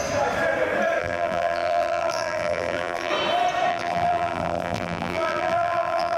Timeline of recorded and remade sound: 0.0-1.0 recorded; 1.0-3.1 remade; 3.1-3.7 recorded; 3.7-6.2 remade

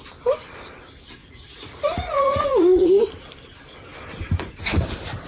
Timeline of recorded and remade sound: 0.0-1.2 recorded; 1.2-3.0 remade; 3.0-5.3 recorded

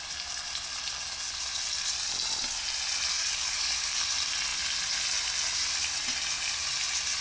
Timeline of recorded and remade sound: 0.0-3.1 recorded; 3.1-4.1 remade; 4.1-7.2 recorded

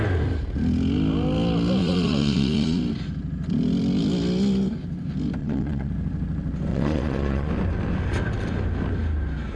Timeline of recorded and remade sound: 0.0-1.8 recorded; 1.8-2.8 remade; 2.8-5.4 recorded; 5.4-5.9 remade; 5.9-6.7 recorded; 6.7-7.5 remade; 7.5-9.6 recorded

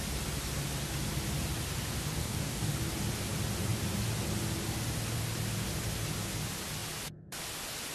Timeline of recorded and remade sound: 0.0-2.2 recorded; 2.2-2.7 remade; 2.7-7.9 recorded

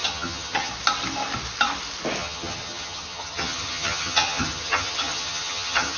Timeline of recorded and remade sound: 0.0-0.7 remade; 0.7-2.2 recorded; 2.2-6.0 remade

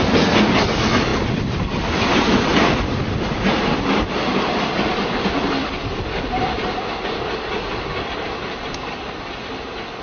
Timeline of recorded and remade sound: 0.0-10.0 recorded